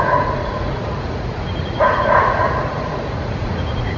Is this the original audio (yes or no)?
no